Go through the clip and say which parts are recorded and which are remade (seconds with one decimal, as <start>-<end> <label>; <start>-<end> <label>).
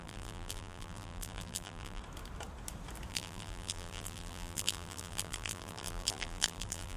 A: 0.0-2.0 remade; 2.0-3.1 recorded; 3.1-7.0 remade